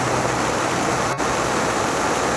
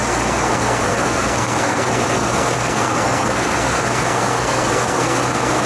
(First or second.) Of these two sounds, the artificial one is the second